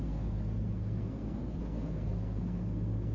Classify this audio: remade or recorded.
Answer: remade